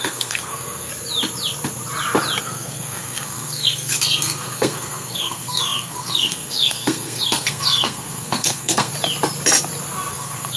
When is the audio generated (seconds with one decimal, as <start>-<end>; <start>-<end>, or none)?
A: 0.0-0.9; 2.4-8.9; 10.1-10.6

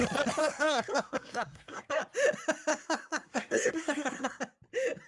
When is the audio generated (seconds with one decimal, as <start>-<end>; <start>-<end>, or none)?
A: 0.4-2.0; 2.7-4.4

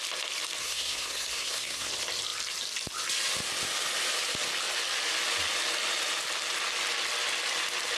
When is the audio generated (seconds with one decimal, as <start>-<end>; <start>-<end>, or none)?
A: 0.6-1.9

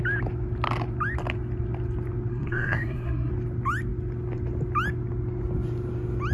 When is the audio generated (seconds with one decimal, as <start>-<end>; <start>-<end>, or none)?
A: 2.3-3.3

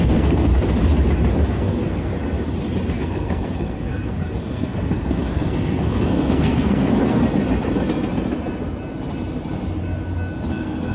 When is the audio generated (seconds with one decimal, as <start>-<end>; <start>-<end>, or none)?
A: 0.0-0.5; 1.5-2.1; 2.9-7.2; 10.5-10.9